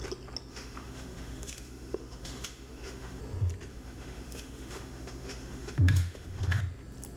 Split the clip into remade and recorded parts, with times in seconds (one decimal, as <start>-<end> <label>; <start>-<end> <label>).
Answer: 0.0-0.5 recorded; 0.5-3.2 remade; 3.2-3.7 recorded; 3.7-6.6 remade; 6.6-7.2 recorded